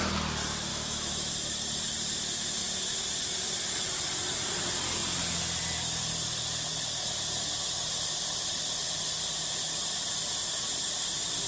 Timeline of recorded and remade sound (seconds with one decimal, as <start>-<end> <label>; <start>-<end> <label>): 0.0-0.7 recorded; 0.7-1.3 remade; 1.3-11.5 recorded